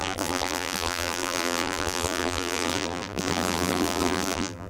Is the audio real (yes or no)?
no